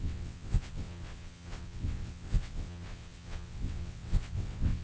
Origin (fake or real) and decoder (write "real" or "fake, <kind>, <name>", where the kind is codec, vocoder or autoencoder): fake, vocoder, WaveNeXt